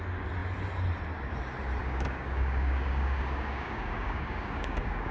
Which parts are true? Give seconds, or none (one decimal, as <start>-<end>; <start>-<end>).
0.0-1.8